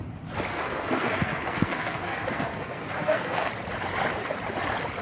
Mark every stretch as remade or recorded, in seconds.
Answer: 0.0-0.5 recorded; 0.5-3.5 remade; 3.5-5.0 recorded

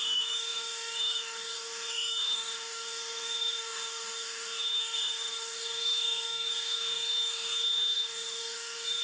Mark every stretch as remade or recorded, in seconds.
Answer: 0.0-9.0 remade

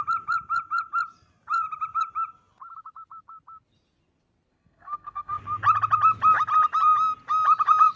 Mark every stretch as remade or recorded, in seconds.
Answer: 0.0-4.5 recorded; 4.5-5.4 remade; 5.4-8.0 recorded

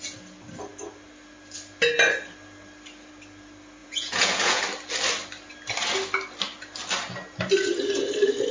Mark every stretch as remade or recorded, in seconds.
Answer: 0.0-3.8 recorded; 3.8-4.6 remade; 4.6-8.5 recorded

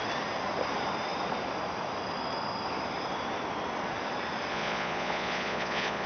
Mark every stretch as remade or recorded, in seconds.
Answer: 0.0-4.5 recorded; 4.5-6.1 remade

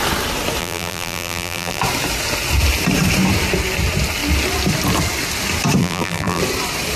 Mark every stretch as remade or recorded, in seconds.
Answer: 0.0-0.6 recorded; 0.6-1.8 remade; 1.8-5.8 recorded; 5.8-6.4 remade; 6.4-7.0 recorded

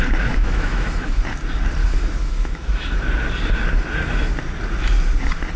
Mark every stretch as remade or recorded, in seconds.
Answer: 0.0-0.4 recorded; 0.4-1.2 remade; 1.2-1.8 recorded; 1.8-3.0 remade; 3.0-5.6 recorded

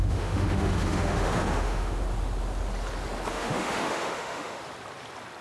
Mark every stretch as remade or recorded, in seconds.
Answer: 0.0-2.0 remade; 2.0-3.3 recorded; 3.3-4.6 remade; 4.6-5.4 recorded